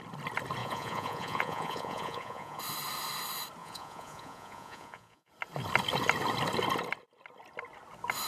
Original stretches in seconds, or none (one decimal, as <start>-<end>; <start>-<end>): 0.0-0.6; 2.6-3.6; 5.3-8.3